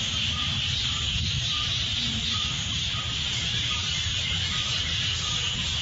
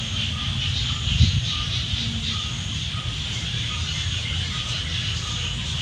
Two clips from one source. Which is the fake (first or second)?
first